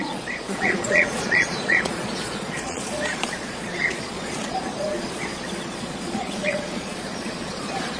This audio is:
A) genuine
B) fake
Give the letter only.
B